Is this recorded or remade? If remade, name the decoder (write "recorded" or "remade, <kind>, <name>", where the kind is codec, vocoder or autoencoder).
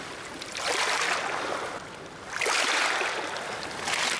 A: recorded